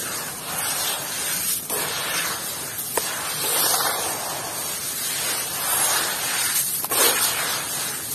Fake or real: real